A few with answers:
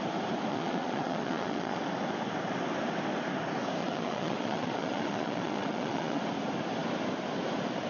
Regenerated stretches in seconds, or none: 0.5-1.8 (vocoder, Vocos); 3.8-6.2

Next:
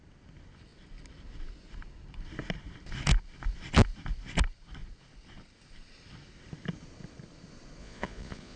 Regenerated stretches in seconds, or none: 7.8-8.6 (vocoder, Vocos)

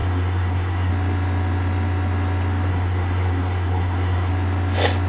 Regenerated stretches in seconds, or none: 0.0-0.9 (codec, SNAC); 2.7-4.3

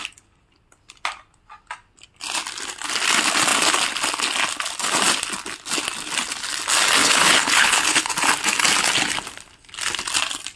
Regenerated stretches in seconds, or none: 7.0-8.1 (codec, HILCodec)

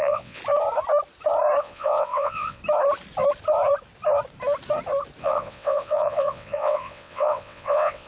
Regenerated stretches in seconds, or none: 0.0-0.4 (vocoder, WaveNeXt); 1.6-2.6; 5.2-8.1

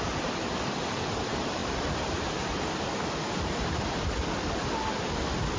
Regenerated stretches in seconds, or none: 1.6-2.6 (vocoder, BigVGAN v2)

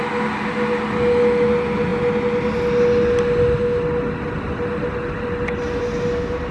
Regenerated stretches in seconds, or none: none